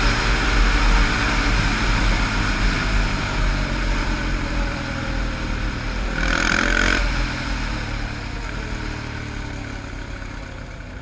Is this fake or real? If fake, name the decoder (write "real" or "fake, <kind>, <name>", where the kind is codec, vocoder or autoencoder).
real